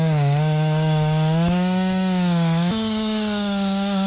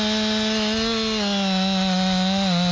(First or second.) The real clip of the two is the second